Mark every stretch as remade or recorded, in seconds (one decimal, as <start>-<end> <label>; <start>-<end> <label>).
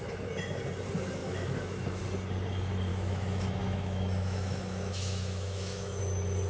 0.0-1.2 recorded; 1.2-2.0 remade; 2.0-2.9 recorded; 2.9-6.0 remade; 6.0-6.5 recorded